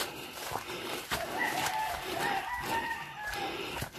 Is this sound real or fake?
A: real